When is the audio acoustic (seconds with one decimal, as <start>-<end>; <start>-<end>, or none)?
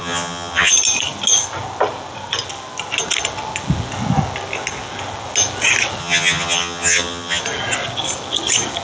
0.7-6.0; 7.4-8.8